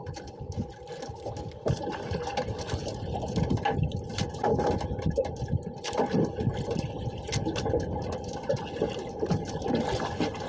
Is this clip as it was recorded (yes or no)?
yes